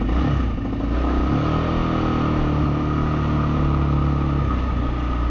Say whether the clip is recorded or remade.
recorded